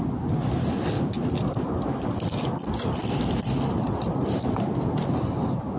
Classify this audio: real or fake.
real